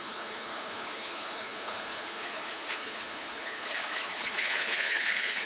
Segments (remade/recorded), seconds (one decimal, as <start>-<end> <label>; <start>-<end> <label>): 0.0-5.5 remade